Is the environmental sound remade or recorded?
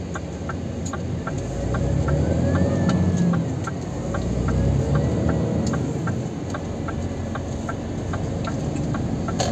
recorded